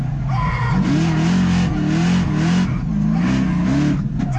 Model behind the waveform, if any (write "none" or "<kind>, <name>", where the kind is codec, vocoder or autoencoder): none